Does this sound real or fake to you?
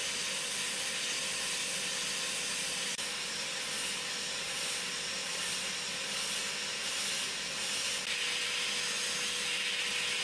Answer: real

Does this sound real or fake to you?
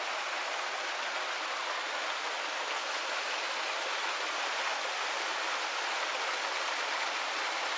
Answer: real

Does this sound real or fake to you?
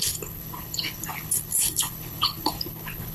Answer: fake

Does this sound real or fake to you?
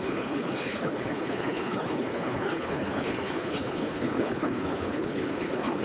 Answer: fake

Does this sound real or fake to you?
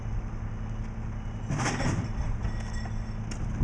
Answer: real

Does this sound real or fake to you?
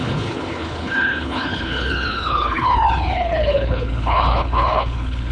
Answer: fake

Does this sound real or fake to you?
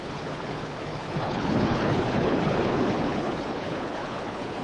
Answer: fake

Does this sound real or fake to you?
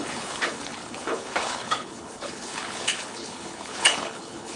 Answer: fake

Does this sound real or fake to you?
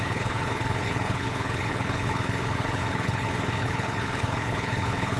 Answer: fake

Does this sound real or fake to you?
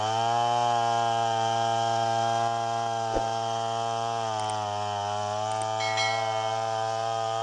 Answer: real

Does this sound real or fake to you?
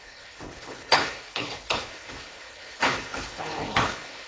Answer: fake